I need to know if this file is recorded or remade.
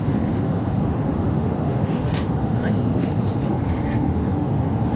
remade